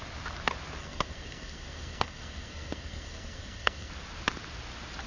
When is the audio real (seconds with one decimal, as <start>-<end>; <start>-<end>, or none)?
0.0-0.8; 3.9-5.1